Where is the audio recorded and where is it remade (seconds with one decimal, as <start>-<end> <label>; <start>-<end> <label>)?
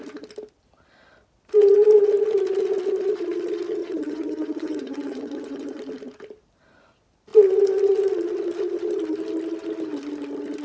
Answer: 0.0-3.8 recorded; 3.8-5.8 remade; 5.8-10.6 recorded